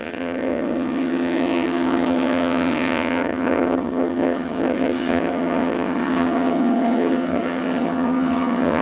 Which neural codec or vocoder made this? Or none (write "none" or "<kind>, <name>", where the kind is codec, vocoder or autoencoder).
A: vocoder, HiFi-GAN